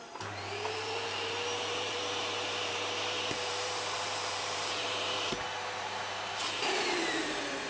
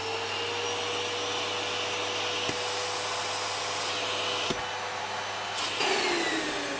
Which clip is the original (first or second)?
second